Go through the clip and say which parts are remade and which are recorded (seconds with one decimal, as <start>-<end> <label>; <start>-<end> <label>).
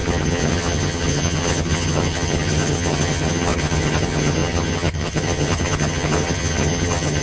0.0-7.2 remade